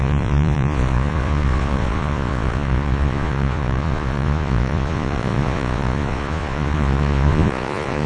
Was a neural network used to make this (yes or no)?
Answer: yes